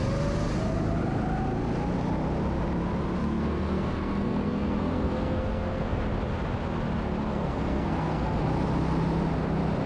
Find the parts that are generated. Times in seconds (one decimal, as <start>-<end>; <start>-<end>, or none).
3.2-6.0; 7.3-8.4